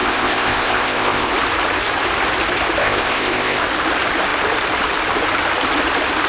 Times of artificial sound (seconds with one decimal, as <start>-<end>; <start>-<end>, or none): 0.0-1.3; 2.8-3.6